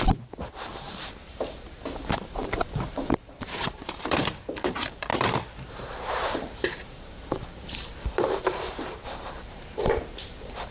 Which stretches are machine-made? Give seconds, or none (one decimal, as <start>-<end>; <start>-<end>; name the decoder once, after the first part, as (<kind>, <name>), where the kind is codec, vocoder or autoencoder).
0.0-5.1 (vocoder, BigVGAN v2); 5.7-10.7